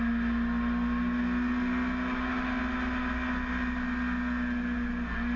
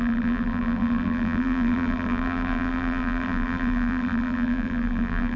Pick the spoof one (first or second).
second